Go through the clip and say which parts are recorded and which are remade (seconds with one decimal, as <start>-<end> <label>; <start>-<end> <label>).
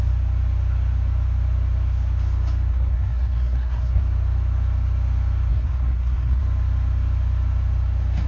0.0-2.7 recorded; 2.7-4.0 remade; 4.0-5.5 recorded; 5.5-6.4 remade; 6.4-8.3 recorded